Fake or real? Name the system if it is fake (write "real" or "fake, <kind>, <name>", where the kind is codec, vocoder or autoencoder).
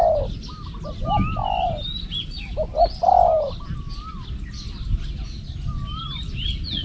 real